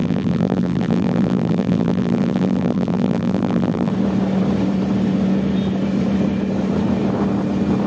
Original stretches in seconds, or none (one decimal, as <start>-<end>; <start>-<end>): 3.9-7.9